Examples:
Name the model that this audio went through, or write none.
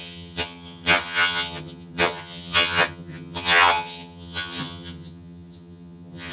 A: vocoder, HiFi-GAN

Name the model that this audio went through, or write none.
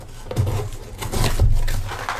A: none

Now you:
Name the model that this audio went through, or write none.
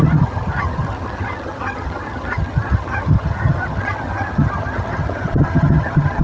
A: vocoder, HiFi-GAN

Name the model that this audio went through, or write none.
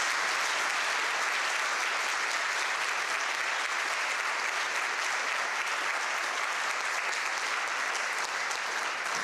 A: none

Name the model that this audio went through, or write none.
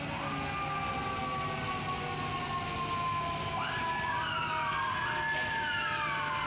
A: none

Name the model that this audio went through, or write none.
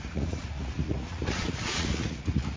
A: vocoder, Vocos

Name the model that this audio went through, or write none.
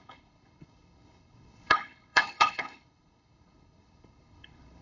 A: codec, HILCodec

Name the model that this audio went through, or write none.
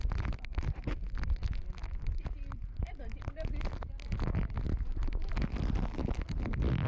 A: none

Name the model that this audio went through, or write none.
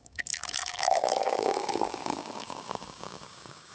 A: codec, DAC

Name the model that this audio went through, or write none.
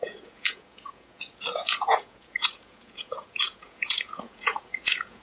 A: vocoder, Vocos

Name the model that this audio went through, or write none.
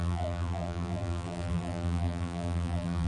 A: vocoder, BigVGAN v2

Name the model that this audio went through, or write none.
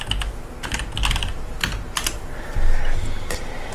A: none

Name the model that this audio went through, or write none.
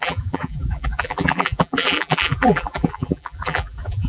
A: vocoder, BigVGAN v2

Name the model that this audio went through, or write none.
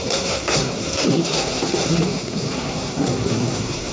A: codec, SNAC